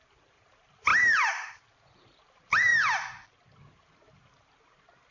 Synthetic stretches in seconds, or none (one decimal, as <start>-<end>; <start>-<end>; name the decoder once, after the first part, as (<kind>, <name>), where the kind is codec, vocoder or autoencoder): 0.0-2.7 (vocoder, BigVGAN v2); 3.6-5.1